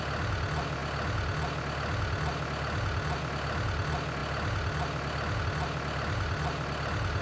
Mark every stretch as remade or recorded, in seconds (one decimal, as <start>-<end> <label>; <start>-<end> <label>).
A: 0.0-7.2 recorded